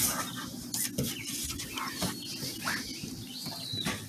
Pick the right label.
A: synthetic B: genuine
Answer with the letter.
B